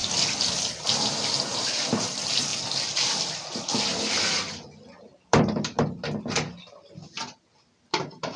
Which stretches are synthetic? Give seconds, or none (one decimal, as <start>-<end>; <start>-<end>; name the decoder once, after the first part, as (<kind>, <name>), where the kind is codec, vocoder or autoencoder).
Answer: 0.0-2.5 (vocoder, BigVGAN v2); 3.2-8.4